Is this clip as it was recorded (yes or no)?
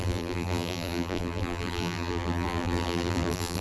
no